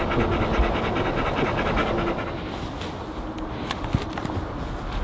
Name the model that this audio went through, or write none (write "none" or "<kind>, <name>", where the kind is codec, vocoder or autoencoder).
none